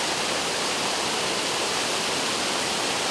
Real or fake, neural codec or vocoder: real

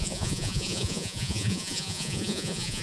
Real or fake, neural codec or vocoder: fake, vocoder, Vocos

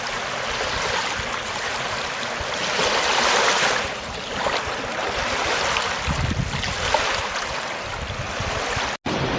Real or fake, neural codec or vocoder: real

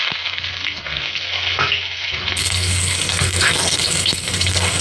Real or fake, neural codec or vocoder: fake, codec, SNAC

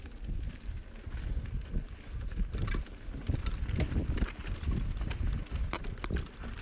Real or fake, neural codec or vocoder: real